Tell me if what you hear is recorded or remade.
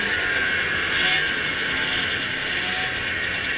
recorded